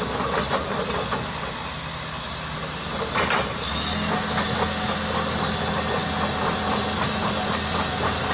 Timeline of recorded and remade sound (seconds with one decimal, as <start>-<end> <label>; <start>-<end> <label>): 0.0-8.3 recorded